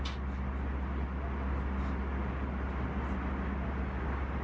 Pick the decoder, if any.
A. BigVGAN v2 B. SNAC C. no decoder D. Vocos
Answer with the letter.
C